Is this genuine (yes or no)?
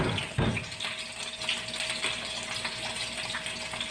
yes